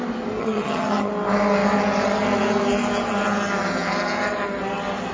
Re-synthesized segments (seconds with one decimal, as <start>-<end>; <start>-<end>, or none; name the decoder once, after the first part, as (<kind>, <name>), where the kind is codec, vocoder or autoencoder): 0.4-1.1 (vocoder, HiFi-GAN)